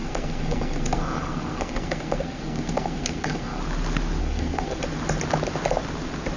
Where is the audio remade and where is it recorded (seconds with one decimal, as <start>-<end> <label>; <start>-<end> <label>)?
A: 0.0-3.6 remade; 3.6-4.2 recorded; 4.2-4.8 remade; 4.8-6.4 recorded